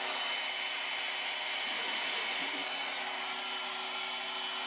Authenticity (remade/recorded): recorded